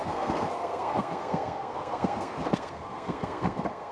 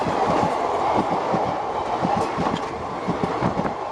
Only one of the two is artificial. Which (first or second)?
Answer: first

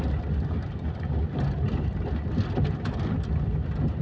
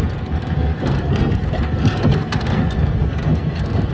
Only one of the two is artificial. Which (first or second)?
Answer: second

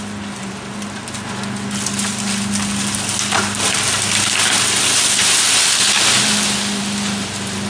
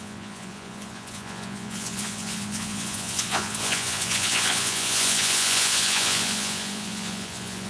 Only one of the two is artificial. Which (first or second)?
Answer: second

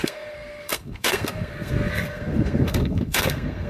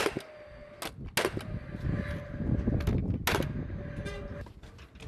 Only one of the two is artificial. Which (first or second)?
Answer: first